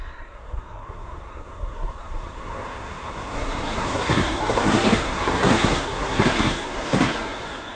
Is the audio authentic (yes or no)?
no